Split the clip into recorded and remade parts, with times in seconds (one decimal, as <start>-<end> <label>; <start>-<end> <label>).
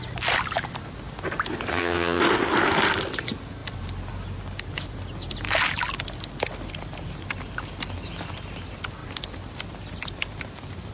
0.0-1.7 recorded; 1.7-2.2 remade; 2.2-10.9 recorded